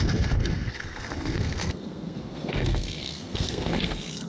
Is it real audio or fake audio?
fake